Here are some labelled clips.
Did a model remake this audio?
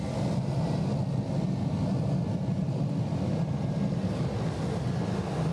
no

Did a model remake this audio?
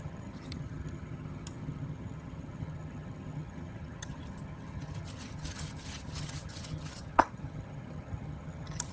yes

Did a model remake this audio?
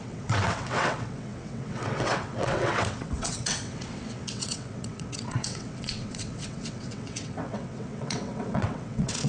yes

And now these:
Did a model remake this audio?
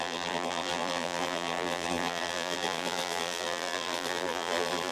yes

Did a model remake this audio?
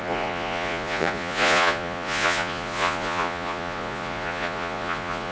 yes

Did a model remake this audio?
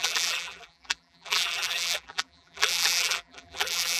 yes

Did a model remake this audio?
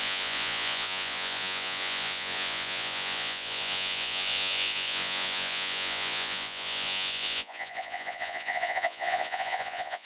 yes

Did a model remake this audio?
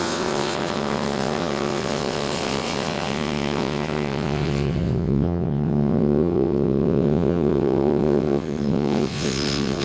yes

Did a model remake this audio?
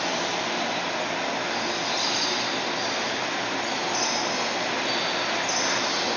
no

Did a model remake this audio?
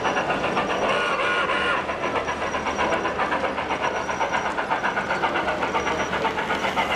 no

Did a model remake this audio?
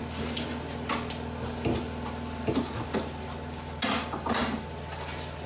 no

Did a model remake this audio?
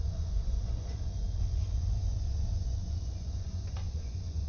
yes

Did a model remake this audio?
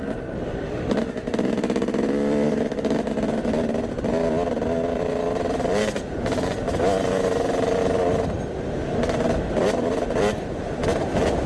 no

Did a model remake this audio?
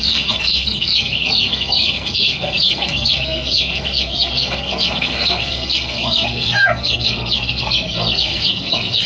yes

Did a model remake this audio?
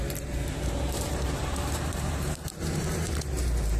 yes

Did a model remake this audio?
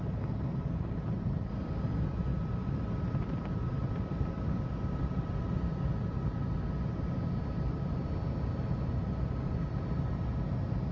no